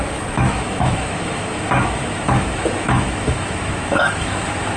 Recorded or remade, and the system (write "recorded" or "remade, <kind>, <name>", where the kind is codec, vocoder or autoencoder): remade, autoencoder, DAC-VAE